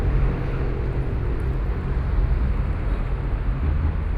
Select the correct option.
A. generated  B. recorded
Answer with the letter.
B